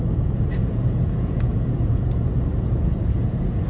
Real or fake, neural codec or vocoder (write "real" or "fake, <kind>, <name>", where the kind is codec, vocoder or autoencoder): fake, vocoder, Vocos